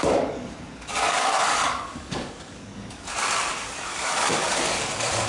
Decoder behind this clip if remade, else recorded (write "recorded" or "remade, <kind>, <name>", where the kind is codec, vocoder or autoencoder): remade, codec, DAC